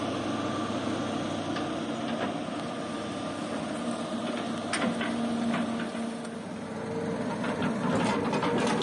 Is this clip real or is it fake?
real